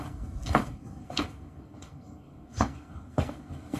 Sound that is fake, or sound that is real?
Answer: fake